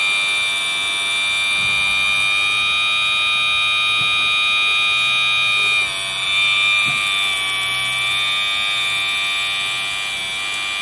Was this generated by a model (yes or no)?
no